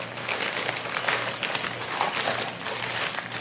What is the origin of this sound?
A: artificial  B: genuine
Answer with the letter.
B